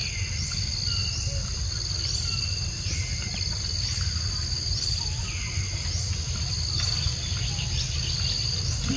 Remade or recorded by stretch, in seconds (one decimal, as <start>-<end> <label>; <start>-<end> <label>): 0.0-9.0 recorded